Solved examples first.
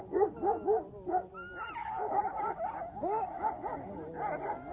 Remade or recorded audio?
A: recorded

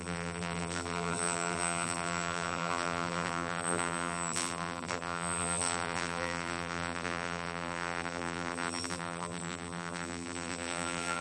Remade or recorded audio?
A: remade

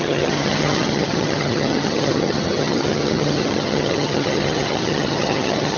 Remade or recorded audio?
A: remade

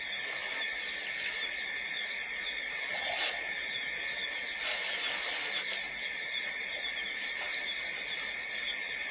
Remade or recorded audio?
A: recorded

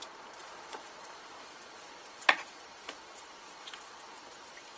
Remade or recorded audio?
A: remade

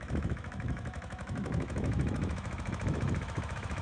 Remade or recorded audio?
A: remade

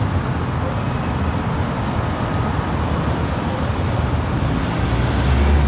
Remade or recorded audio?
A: recorded